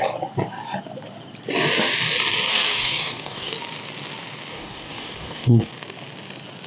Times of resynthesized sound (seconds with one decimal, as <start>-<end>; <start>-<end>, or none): 2.5-3.5; 4.5-5.7